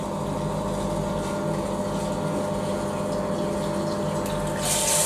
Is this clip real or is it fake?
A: real